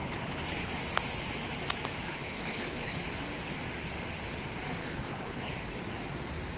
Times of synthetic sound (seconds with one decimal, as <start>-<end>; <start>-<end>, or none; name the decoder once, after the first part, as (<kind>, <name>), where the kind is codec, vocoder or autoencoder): 0.0-0.7 (codec, HILCodec); 2.1-3.0; 4.8-5.4